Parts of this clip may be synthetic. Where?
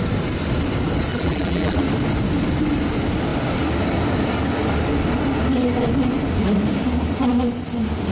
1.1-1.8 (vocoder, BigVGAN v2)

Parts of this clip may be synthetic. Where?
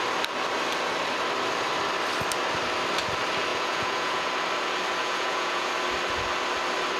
3.5-4.3 (vocoder, Vocos); 5.0-5.7